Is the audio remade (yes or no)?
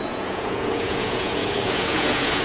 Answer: yes